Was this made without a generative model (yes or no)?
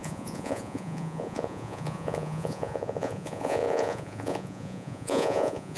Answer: no